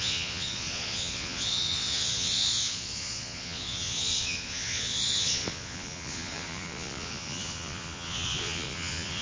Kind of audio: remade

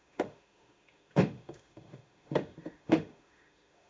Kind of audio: remade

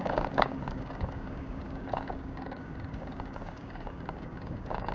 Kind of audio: remade